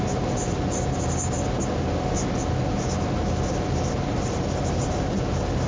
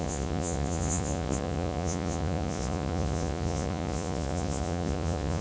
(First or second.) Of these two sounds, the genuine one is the first